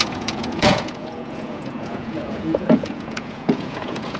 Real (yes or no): no